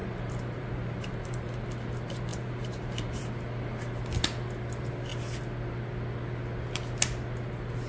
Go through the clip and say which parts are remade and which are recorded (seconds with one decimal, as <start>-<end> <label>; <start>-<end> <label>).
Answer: 0.0-1.2 remade; 1.2-2.3 recorded; 2.3-3.2 remade; 3.2-7.9 recorded